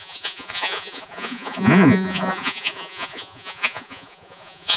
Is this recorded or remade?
remade